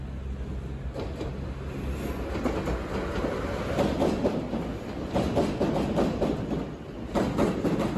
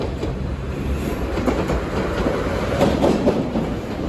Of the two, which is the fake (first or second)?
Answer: second